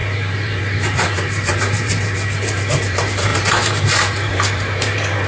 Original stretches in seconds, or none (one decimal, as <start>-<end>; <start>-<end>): none